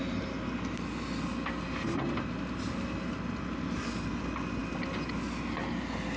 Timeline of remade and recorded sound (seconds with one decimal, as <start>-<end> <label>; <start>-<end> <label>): 0.0-6.2 recorded